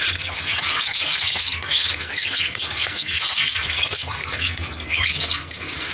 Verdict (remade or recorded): remade